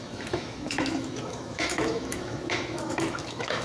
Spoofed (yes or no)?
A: yes